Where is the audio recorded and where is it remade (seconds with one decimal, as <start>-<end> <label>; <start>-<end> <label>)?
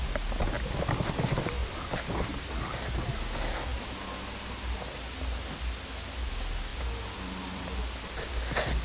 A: 0.0-1.6 recorded; 1.6-2.5 remade; 2.5-8.8 recorded